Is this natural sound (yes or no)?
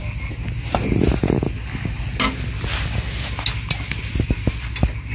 yes